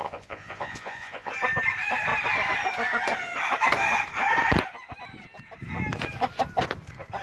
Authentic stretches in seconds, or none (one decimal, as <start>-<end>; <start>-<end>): 1.3-7.2